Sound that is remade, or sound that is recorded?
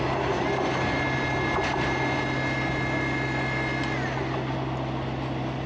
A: recorded